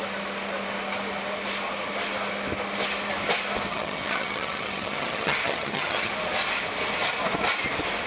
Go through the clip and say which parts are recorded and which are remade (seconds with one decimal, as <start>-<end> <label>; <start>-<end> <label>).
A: 0.0-3.7 recorded; 3.7-6.1 remade; 6.1-8.1 recorded